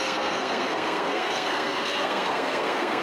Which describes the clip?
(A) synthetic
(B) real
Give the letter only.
A